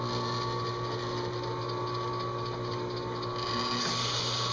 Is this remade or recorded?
recorded